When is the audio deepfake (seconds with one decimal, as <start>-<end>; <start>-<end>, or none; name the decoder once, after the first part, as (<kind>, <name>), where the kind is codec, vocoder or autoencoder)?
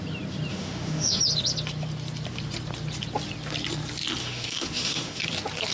0.5-1.2 (autoencoder, DAC-VAE); 4.2-5.2